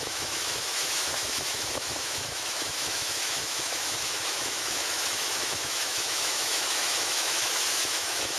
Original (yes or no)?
no